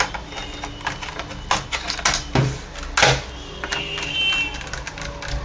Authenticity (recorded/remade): recorded